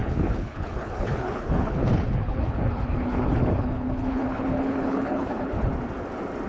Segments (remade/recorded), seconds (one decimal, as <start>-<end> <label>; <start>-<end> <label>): 0.0-5.7 remade; 5.7-6.5 recorded